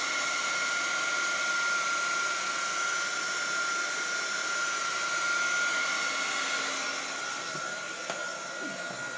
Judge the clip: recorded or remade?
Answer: recorded